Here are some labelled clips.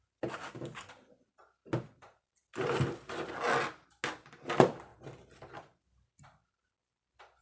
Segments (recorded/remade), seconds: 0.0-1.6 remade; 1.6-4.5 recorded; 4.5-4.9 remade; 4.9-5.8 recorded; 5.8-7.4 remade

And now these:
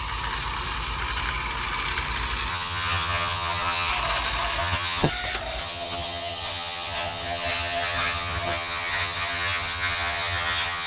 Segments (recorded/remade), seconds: 0.0-2.5 recorded; 2.5-3.9 remade; 3.9-4.6 recorded; 4.6-5.1 remade; 5.1-5.6 recorded; 5.6-10.9 remade

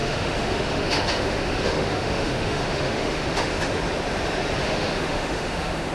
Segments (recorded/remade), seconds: 0.0-3.5 remade; 3.5-4.6 recorded; 4.6-5.9 remade

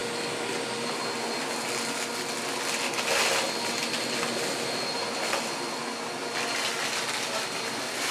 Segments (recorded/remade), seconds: 0.0-8.1 recorded

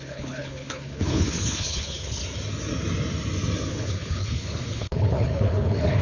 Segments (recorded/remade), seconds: 0.0-2.2 remade; 2.2-3.7 recorded; 3.7-6.0 remade

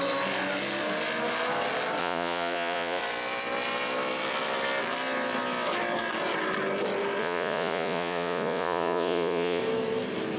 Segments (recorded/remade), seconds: 0.0-2.0 recorded; 2.0-3.0 remade; 3.0-7.2 recorded; 7.2-9.6 remade; 9.6-10.4 recorded